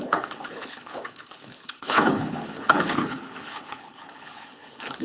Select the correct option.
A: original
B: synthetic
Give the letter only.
B